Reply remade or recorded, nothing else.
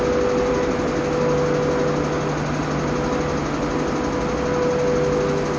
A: recorded